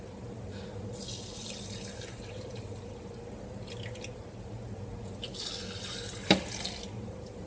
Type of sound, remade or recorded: recorded